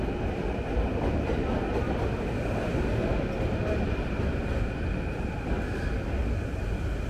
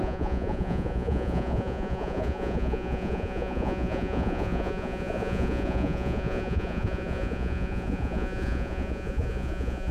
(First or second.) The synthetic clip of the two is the second